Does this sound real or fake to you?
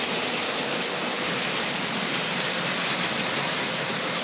real